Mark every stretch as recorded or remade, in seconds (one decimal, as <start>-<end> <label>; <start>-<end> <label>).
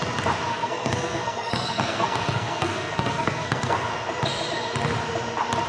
0.0-0.5 recorded; 0.5-3.9 remade; 3.9-5.7 recorded